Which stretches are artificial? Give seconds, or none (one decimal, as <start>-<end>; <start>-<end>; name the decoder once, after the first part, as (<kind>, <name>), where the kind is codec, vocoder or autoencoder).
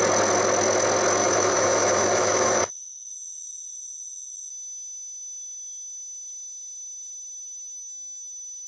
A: 1.2-4.5 (autoencoder, DAC-VAE)